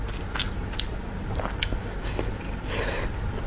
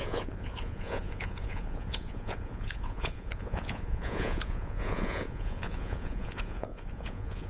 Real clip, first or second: first